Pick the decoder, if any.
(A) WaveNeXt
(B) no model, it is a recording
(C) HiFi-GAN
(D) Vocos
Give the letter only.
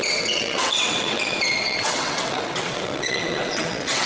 A